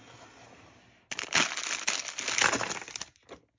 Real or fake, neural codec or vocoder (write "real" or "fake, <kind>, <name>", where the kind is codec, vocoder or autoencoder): real